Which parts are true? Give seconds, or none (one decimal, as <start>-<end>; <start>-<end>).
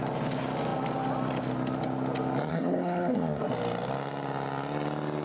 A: 0.0-2.5; 3.5-5.2